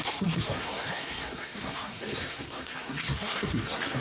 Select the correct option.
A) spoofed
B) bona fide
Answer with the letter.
A